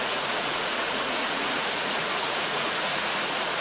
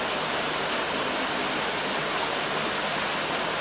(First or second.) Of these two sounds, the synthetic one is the first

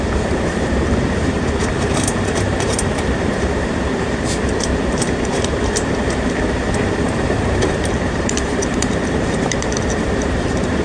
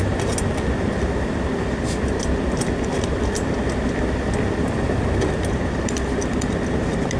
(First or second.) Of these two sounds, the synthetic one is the first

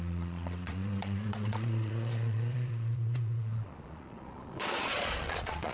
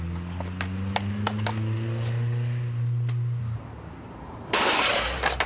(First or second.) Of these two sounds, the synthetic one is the first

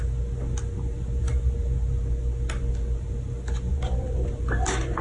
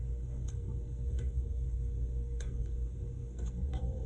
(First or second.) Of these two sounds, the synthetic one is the second